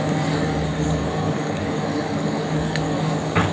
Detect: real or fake fake